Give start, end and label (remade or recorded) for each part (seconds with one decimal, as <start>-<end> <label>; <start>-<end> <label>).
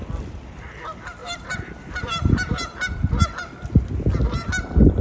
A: 0.0-1.2 recorded; 1.2-3.2 remade; 3.2-5.0 recorded